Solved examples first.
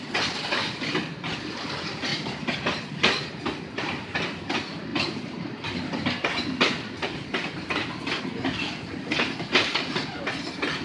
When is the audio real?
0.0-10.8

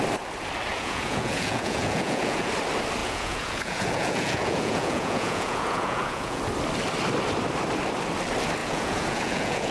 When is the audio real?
0.0-0.7; 2.5-3.0; 6.4-8.6

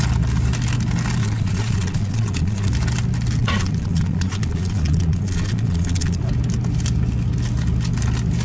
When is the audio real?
0.0-1.2; 2.7-3.4; 6.2-8.4